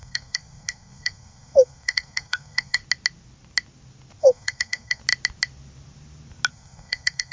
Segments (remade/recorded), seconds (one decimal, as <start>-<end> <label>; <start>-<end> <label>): 0.0-2.8 remade; 2.8-4.2 recorded; 4.2-5.0 remade; 5.0-6.5 recorded; 6.5-7.3 remade